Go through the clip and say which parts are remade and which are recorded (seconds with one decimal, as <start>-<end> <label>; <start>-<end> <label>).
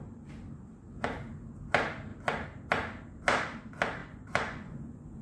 0.0-4.0 recorded; 4.0-5.2 remade